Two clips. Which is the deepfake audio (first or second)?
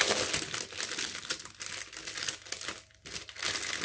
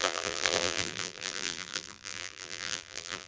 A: second